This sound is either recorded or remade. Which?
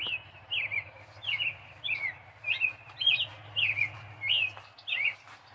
recorded